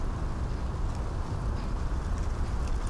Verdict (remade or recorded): recorded